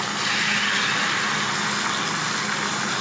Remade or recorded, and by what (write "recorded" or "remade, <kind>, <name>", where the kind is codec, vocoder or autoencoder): recorded